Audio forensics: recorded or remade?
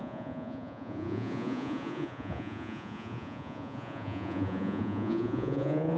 remade